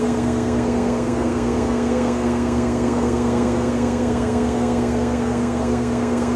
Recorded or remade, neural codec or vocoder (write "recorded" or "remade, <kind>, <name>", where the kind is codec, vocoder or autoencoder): remade, codec, SNAC